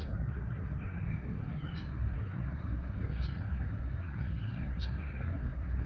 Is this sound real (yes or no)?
no